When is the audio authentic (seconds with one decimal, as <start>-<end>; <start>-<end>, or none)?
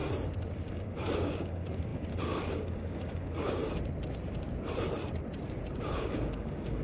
0.0-0.7; 3.6-5.8